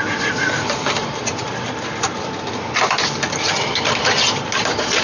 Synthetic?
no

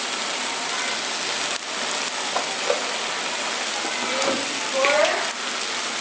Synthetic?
no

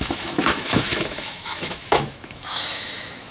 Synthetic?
yes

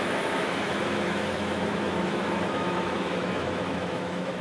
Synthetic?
yes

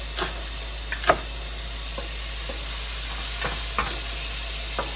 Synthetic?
no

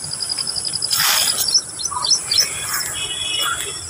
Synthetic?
no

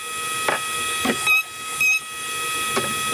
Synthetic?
no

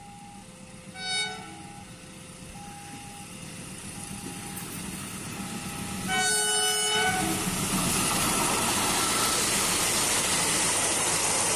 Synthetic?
no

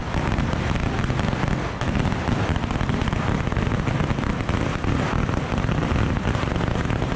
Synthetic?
no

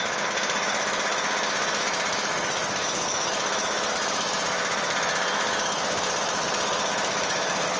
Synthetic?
yes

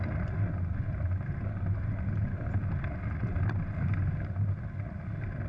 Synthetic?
no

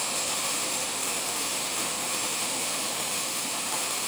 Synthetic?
yes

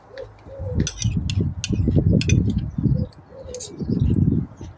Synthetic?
no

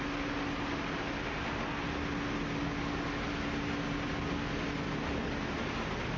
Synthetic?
no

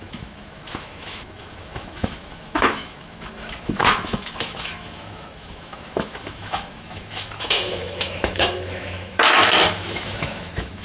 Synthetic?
yes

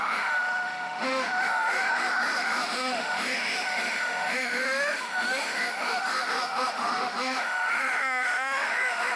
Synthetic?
yes